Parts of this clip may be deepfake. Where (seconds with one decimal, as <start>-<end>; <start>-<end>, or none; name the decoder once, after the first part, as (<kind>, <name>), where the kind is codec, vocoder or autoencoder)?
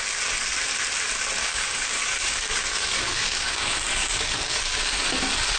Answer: 1.4-4.8 (codec, DAC)